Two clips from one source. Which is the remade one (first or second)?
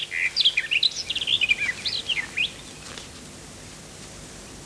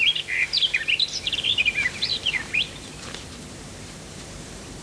second